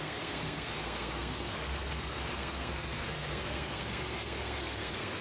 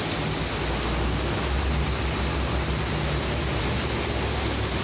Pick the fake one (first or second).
first